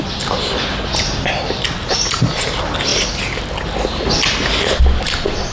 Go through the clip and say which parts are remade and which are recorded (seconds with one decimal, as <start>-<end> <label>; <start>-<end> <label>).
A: 0.0-5.5 recorded